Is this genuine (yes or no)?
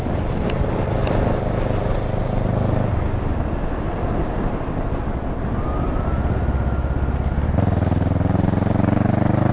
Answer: yes